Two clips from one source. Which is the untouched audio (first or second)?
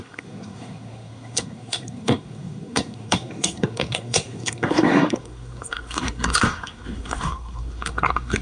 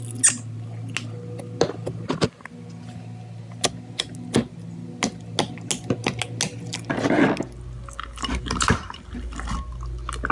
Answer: second